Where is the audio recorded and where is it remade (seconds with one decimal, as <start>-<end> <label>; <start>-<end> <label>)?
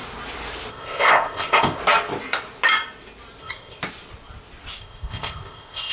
0.0-0.7 recorded; 0.7-1.8 remade; 1.8-3.4 recorded; 3.4-3.8 remade; 3.8-4.8 recorded; 4.8-5.9 remade